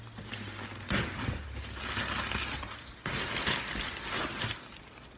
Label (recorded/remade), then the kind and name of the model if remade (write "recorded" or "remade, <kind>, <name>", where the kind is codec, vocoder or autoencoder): recorded